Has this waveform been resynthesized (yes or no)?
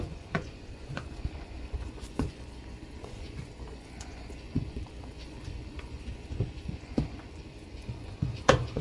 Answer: yes